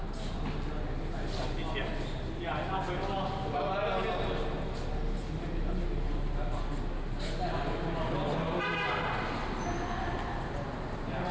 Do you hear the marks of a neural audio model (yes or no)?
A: no